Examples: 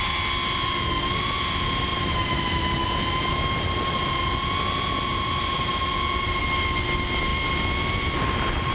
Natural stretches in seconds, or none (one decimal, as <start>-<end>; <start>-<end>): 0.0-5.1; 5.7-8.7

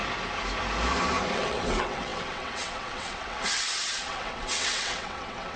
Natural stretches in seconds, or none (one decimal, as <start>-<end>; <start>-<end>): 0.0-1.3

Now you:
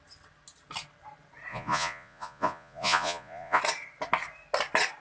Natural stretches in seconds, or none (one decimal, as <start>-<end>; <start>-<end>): 0.0-1.5; 3.6-5.0